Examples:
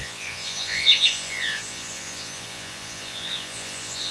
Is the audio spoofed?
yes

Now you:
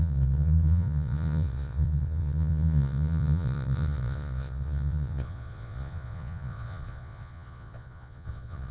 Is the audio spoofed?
yes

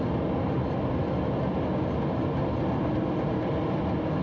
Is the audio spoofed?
no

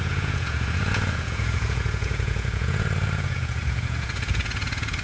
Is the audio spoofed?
yes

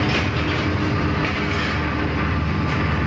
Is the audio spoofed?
no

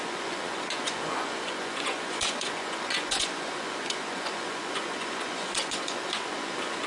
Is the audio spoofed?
yes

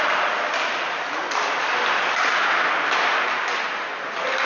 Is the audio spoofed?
no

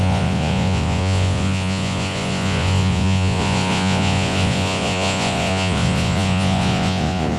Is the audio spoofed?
yes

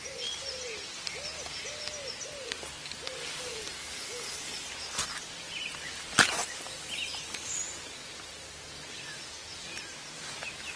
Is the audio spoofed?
no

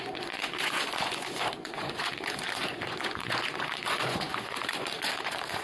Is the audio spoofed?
yes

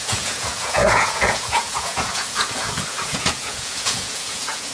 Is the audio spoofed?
yes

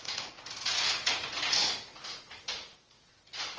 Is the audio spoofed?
yes